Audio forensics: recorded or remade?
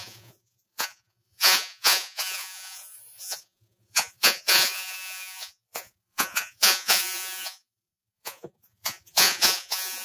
remade